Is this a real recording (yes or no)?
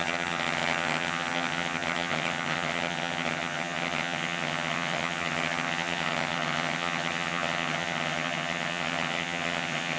no